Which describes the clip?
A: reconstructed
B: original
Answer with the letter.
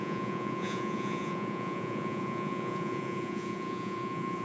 A